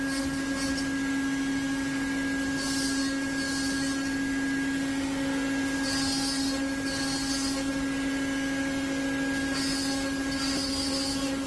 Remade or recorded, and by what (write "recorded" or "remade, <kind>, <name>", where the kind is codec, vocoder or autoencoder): recorded